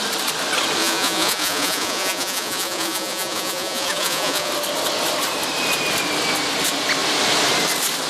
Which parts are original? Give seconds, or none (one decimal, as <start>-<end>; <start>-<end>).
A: 0.0-0.8; 4.5-8.1